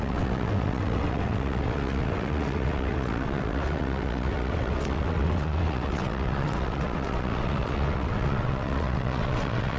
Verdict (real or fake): fake